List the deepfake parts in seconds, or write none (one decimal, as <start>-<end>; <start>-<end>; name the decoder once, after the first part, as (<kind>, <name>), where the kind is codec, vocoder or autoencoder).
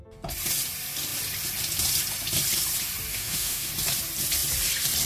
3.1-3.7 (autoencoder, DAC-VAE)